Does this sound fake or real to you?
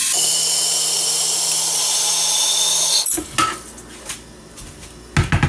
real